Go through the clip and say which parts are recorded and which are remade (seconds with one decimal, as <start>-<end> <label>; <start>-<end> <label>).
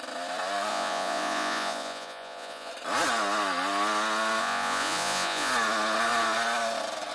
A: 0.0-0.7 recorded; 0.7-2.7 remade; 2.7-4.4 recorded; 4.4-5.5 remade; 5.5-7.1 recorded